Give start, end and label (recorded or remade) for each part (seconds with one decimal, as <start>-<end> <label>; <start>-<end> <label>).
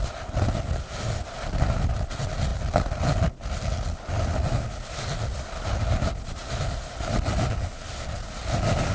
0.0-8.9 recorded